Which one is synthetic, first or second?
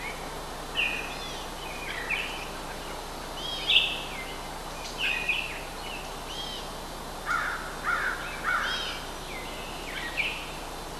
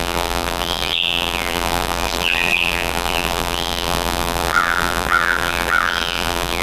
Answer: second